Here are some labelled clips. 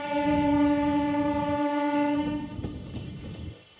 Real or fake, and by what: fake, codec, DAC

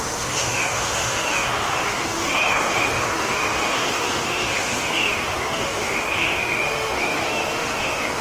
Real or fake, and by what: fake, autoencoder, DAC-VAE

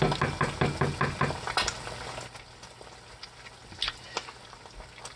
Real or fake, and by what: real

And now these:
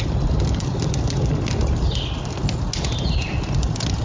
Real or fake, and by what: real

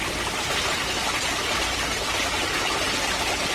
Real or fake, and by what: real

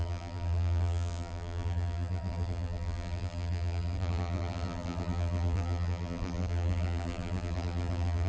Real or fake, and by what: fake, vocoder, BigVGAN v2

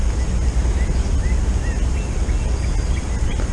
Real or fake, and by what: real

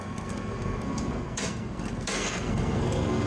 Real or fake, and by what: fake, codec, SNAC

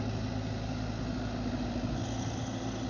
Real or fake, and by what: real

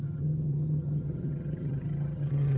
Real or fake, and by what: fake, vocoder, HiFi-GAN